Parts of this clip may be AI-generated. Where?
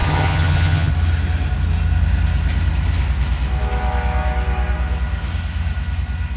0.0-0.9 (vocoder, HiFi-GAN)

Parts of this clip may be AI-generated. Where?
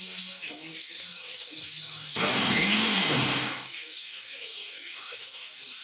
0.0-5.8 (codec, DAC)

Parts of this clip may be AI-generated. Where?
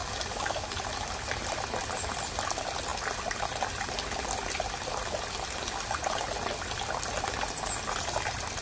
0.0-0.7 (codec, DAC)